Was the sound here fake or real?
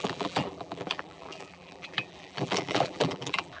fake